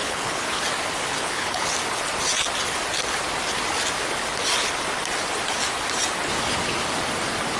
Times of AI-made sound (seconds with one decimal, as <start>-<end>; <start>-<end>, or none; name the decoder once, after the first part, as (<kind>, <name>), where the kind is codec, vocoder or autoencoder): 0.0-0.6 (codec, HILCodec); 1.1-1.7